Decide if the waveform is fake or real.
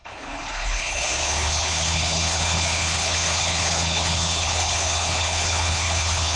fake